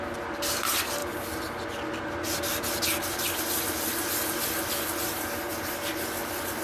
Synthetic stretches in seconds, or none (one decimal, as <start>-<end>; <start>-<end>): none